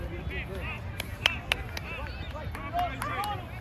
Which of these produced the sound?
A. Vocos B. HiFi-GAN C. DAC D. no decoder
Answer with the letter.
D